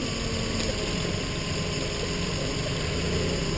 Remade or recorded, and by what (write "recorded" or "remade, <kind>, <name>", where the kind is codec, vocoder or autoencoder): recorded